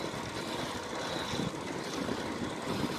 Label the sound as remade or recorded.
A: recorded